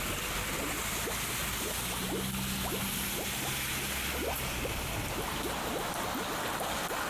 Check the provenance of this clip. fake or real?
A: real